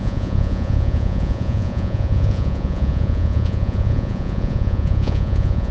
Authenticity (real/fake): fake